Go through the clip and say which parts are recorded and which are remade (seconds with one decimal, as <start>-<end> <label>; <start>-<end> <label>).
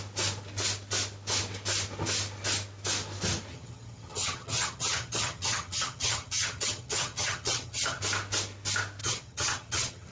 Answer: 0.0-3.5 recorded; 3.5-8.0 remade; 8.0-9.0 recorded; 9.0-10.1 remade